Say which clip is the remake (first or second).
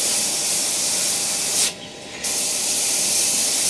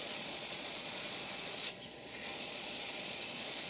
second